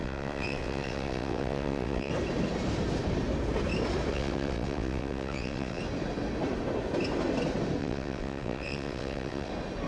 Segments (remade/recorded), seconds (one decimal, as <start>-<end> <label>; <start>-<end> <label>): 0.0-2.1 remade; 2.1-4.1 recorded; 4.1-5.8 remade; 5.8-7.8 recorded; 7.8-9.5 remade; 9.5-9.9 recorded